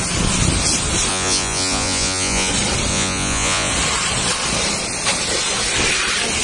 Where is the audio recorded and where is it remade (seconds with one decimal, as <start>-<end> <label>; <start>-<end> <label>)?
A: 0.0-1.1 recorded; 1.1-2.5 remade; 2.5-2.9 recorded; 2.9-3.7 remade; 3.7-6.4 recorded